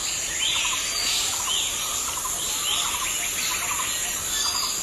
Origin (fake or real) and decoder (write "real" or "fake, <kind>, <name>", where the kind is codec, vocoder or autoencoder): real